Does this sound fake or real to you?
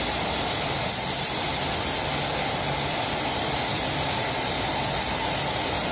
real